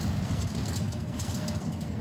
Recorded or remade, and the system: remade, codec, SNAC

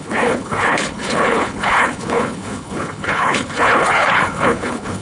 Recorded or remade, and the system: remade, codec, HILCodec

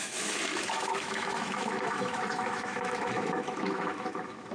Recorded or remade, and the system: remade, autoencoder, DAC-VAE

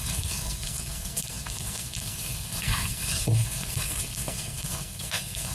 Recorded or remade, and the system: remade, codec, SNAC